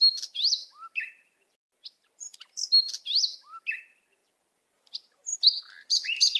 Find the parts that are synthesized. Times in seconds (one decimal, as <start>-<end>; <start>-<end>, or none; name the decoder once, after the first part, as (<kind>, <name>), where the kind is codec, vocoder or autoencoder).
none